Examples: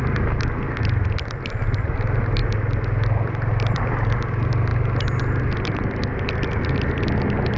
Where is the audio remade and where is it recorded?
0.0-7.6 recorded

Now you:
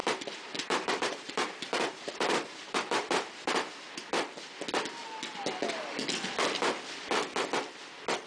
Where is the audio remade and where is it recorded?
0.0-4.1 remade; 4.1-8.3 recorded

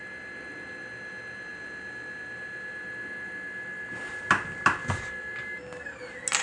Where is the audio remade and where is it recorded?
0.0-6.4 recorded

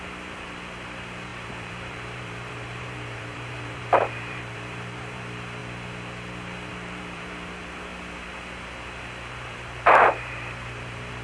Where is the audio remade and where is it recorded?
0.0-5.6 remade; 5.6-6.7 recorded; 6.7-7.9 remade; 7.9-9.3 recorded; 9.3-11.2 remade

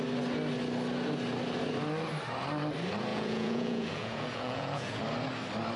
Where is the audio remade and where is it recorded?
0.0-3.1 recorded; 3.1-5.0 remade; 5.0-5.8 recorded

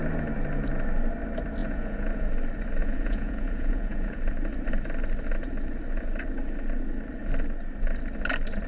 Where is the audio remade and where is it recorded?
0.0-1.6 recorded; 1.6-2.3 remade; 2.3-2.8 recorded; 2.8-4.2 remade; 4.2-8.7 recorded

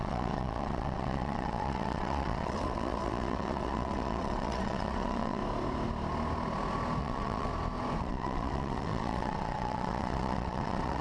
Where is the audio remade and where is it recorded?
0.0-5.4 remade; 5.4-7.0 recorded; 7.0-7.5 remade; 7.5-8.0 recorded; 8.0-11.0 remade

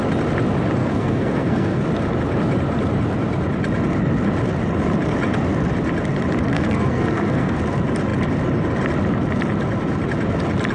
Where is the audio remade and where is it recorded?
0.0-0.8 recorded; 0.8-1.8 remade; 1.8-6.5 recorded; 6.5-7.6 remade; 7.6-10.7 recorded